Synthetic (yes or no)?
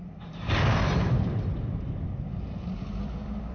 no